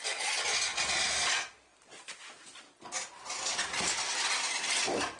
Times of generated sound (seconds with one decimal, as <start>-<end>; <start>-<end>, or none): none